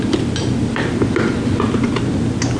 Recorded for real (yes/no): yes